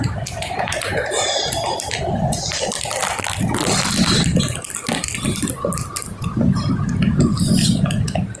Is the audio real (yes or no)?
yes